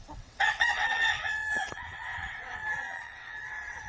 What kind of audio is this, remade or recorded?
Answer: remade